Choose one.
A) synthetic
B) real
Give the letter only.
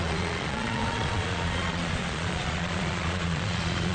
A